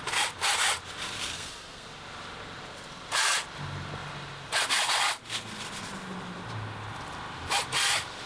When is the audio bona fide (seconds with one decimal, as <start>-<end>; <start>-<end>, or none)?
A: 0.0-1.3; 1.9-8.3